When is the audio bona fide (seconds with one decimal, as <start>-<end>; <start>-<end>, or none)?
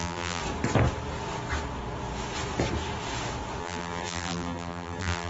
0.4-3.6